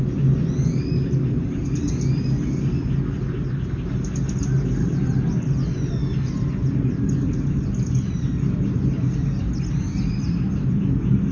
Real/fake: real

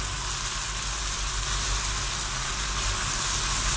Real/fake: real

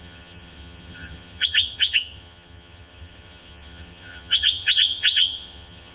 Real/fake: fake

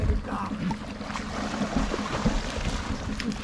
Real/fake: real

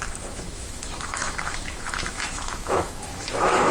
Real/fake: fake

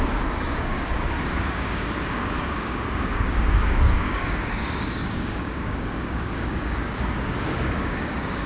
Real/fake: fake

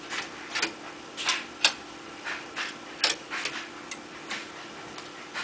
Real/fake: real